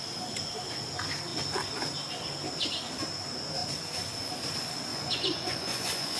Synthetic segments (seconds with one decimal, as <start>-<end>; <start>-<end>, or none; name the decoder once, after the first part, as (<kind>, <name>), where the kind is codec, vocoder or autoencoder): 4.9-6.2 (vocoder, Vocos)